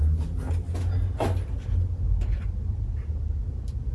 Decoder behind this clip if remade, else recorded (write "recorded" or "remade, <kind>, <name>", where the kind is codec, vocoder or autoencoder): recorded